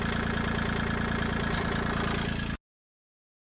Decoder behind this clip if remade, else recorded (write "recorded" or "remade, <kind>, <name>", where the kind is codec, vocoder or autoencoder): recorded